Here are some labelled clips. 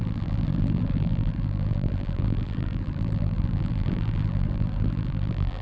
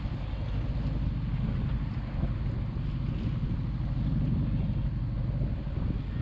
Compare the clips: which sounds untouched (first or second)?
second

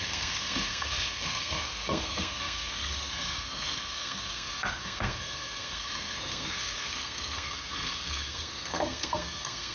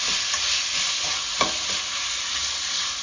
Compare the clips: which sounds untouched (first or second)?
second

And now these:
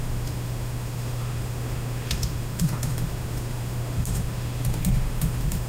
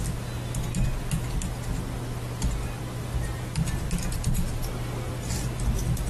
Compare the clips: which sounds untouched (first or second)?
second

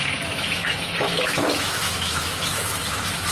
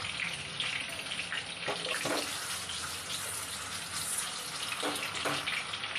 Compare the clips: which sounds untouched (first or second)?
second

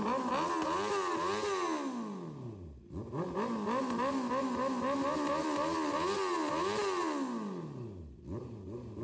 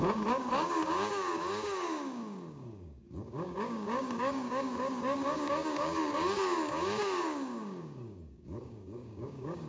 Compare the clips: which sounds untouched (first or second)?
first